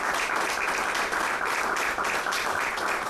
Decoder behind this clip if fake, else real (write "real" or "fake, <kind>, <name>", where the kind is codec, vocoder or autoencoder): real